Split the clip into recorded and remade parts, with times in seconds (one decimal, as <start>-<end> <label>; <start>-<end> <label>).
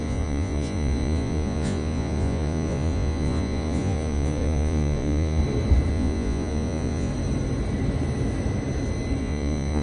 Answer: 0.0-5.4 remade; 5.4-5.9 recorded; 5.9-7.1 remade; 7.1-9.2 recorded; 9.2-9.8 remade